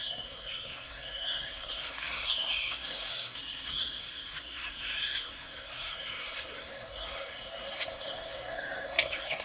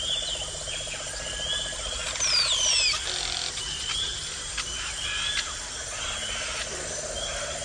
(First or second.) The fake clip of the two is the first